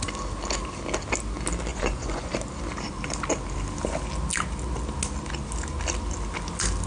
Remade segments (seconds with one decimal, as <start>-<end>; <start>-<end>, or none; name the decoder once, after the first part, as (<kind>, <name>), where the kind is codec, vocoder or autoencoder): 1.7-2.3 (vocoder, Vocos)